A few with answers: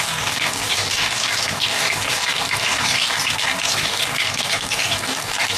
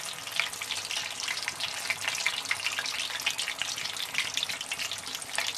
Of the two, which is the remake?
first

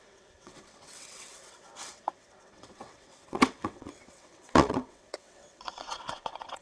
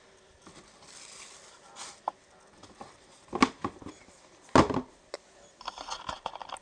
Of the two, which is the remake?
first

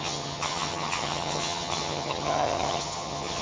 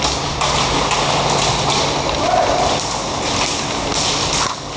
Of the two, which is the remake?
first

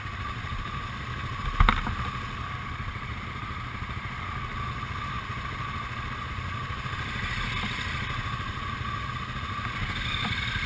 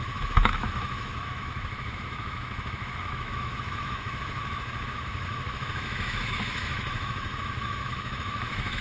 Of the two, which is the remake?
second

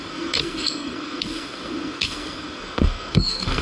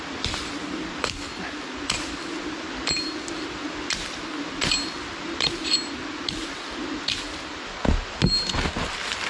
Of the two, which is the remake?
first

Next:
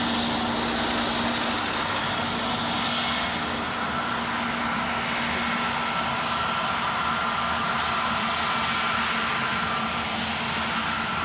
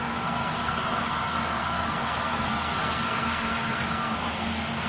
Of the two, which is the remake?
second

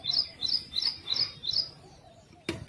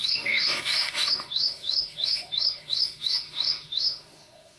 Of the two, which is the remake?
second